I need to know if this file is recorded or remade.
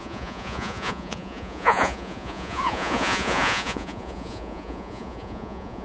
remade